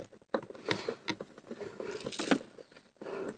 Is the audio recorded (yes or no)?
yes